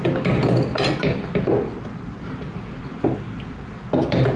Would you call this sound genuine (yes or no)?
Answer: yes